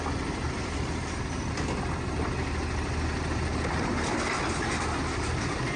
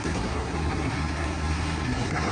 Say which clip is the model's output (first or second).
second